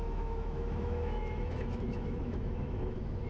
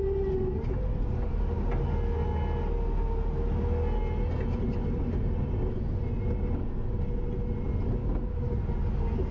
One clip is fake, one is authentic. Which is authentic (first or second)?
second